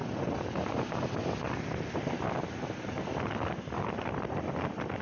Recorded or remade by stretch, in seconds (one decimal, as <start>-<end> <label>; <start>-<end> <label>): 0.0-5.0 recorded